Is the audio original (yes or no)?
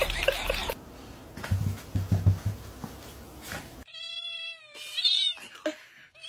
yes